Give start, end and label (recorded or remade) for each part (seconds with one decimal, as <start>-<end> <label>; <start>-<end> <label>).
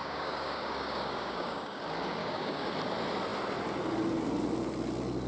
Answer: 0.0-1.8 remade; 1.8-2.2 recorded; 2.2-2.7 remade; 2.7-5.3 recorded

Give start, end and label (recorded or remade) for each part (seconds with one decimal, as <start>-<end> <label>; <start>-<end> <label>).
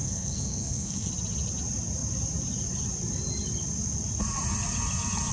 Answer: 0.0-1.1 remade; 1.1-5.3 recorded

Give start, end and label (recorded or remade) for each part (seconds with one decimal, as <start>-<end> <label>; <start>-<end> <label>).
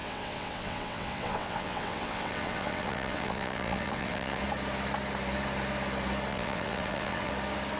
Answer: 0.0-4.4 remade; 4.4-6.3 recorded; 6.3-7.3 remade; 7.3-7.8 recorded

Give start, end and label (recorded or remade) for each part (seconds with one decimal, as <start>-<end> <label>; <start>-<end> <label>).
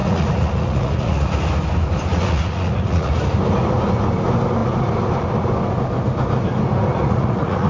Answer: 0.0-1.4 remade; 1.4-2.1 recorded; 2.1-3.1 remade; 3.1-6.9 recorded; 6.9-7.7 remade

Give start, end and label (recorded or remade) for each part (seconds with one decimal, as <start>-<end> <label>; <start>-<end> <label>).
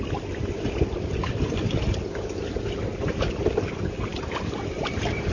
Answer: 0.0-5.3 recorded